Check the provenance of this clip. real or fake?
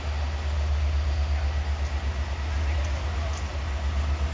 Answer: real